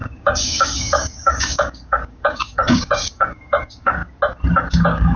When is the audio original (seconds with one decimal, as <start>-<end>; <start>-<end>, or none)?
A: 4.0-4.7